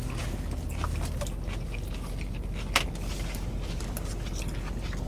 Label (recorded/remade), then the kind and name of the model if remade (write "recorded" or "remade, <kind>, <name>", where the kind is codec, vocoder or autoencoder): recorded